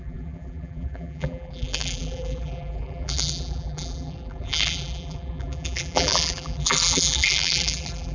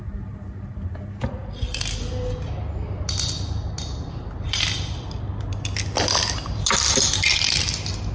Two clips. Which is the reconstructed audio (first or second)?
first